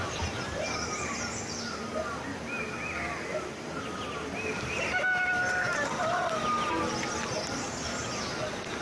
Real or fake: real